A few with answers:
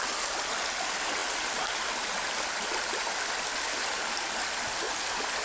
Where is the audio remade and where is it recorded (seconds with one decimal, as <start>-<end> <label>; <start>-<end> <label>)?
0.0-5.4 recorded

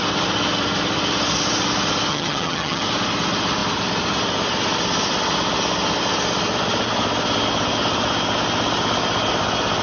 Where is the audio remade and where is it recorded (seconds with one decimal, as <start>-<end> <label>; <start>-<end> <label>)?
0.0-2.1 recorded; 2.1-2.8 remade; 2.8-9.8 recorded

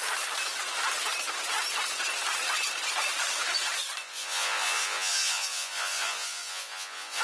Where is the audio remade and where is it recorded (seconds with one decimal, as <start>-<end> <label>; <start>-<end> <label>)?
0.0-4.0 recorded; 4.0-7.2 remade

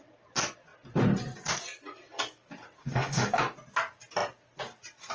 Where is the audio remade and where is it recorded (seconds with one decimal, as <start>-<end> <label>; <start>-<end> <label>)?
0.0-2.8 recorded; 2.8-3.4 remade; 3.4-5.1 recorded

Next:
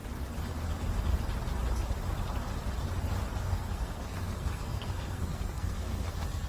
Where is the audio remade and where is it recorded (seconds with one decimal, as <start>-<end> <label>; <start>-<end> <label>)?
0.0-3.4 recorded; 3.4-6.5 remade

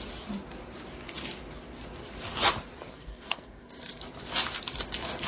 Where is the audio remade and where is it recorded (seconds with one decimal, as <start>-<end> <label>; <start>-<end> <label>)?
0.0-2.9 recorded; 2.9-4.0 remade; 4.0-5.3 recorded

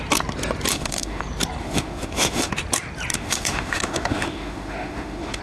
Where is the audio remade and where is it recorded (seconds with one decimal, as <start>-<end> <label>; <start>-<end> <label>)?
0.0-0.7 recorded; 0.7-1.2 remade; 1.2-1.6 recorded; 1.6-2.5 remade; 2.5-3.1 recorded; 3.1-5.4 remade

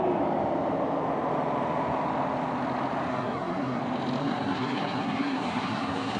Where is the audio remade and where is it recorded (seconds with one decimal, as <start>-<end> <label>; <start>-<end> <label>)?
0.0-3.1 recorded; 3.1-3.8 remade; 3.8-4.2 recorded; 4.2-6.2 remade